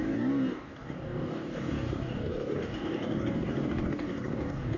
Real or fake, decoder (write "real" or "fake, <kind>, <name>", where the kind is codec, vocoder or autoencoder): fake, codec, DAC